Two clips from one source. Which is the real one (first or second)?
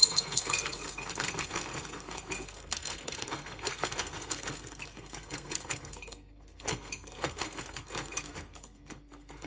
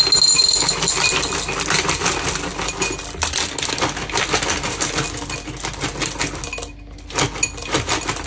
second